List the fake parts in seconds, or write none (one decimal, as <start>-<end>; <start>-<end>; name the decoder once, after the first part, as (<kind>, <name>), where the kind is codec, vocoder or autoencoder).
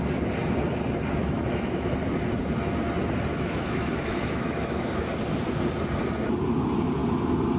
1.2-1.9 (autoencoder, DAC-VAE); 3.3-5.0